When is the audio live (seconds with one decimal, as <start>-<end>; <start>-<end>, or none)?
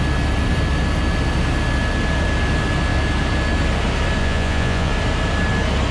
0.0-4.2; 4.9-5.9